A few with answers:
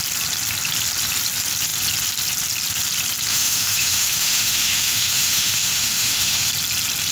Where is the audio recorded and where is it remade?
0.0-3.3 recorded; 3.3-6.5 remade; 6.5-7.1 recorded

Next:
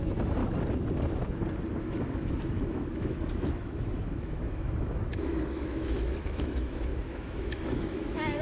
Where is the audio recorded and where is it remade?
0.0-0.4 remade; 0.4-1.8 recorded; 1.8-8.4 remade

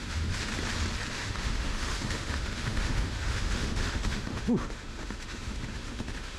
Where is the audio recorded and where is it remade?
0.0-0.5 remade; 0.5-1.1 recorded; 1.1-6.4 remade

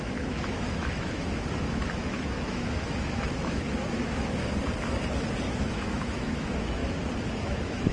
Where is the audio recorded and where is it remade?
0.0-4.4 remade; 4.4-5.4 recorded; 5.4-6.8 remade; 6.8-7.4 recorded; 7.4-7.9 remade

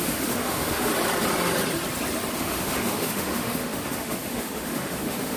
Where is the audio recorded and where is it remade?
0.0-0.9 remade; 0.9-2.4 recorded; 2.4-5.4 remade

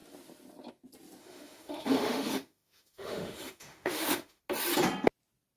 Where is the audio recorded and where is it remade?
0.0-1.2 recorded; 1.2-4.4 remade; 4.4-5.6 recorded

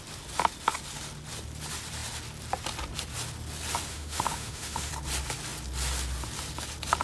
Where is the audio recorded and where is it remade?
0.0-3.9 recorded; 3.9-4.9 remade; 4.9-7.0 recorded